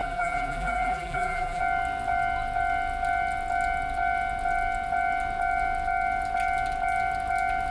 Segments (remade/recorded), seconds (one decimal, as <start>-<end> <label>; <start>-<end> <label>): 0.0-1.6 remade; 1.6-7.7 recorded